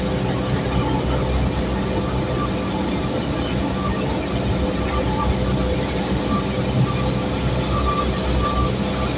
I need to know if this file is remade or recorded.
recorded